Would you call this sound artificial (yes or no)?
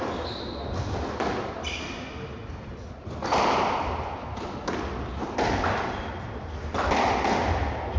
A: no